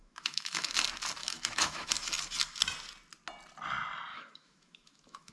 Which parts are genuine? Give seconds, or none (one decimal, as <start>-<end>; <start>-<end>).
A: 0.7-1.2; 1.9-4.1